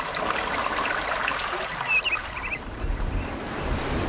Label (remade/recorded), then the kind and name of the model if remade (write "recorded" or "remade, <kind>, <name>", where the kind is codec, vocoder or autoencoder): recorded